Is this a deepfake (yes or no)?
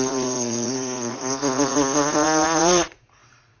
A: yes